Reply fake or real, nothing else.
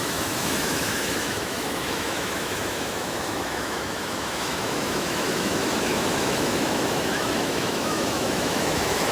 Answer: fake